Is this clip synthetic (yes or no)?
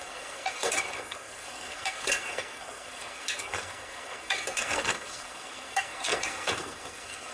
yes